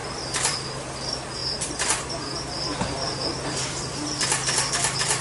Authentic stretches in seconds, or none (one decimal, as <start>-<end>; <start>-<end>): 0.0-5.2